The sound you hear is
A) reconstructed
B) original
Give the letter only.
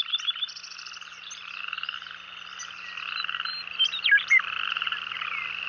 B